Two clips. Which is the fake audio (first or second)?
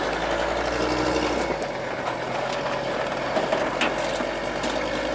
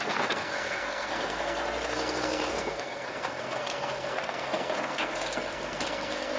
second